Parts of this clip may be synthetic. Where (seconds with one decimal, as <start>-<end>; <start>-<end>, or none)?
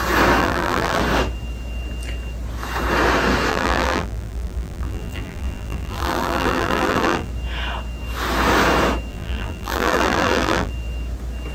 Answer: 0.4-1.0; 3.5-7.3; 9.1-10.7